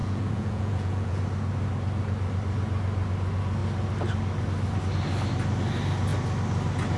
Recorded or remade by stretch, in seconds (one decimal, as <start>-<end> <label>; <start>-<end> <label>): 0.0-1.2 remade; 1.2-7.0 recorded